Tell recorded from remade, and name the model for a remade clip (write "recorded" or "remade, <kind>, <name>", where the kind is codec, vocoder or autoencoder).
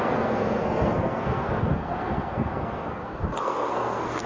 remade, codec, SNAC